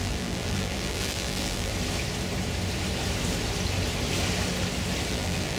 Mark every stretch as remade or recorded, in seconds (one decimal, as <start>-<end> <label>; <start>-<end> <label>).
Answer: 0.0-1.7 remade; 1.7-5.1 recorded; 5.1-5.6 remade